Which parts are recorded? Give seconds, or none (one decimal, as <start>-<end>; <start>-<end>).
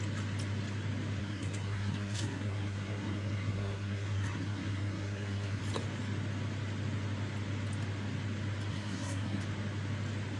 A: 0.0-1.2; 5.6-8.7; 9.4-10.4